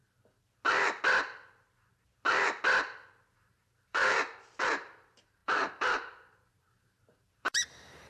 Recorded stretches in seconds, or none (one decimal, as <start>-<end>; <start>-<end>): 0.0-3.3; 4.0-4.6